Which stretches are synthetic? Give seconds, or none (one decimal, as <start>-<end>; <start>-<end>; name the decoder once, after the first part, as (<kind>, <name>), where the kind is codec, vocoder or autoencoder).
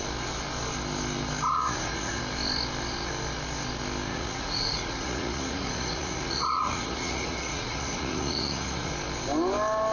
1.5-2.2 (vocoder, Vocos); 4.1-8.9